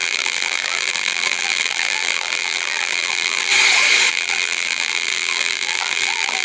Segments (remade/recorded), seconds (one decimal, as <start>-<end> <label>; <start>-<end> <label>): 0.0-3.5 remade; 3.5-4.1 recorded; 4.1-6.4 remade

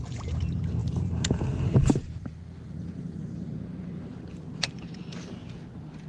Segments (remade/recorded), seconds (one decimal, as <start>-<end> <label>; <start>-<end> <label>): 0.0-5.4 remade; 5.4-6.1 recorded

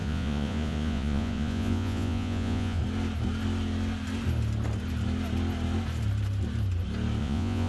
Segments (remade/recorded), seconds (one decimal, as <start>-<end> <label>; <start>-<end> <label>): 0.0-2.8 remade; 2.8-7.2 recorded; 7.2-7.7 remade